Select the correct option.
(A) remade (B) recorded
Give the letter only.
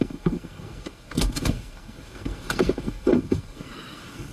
A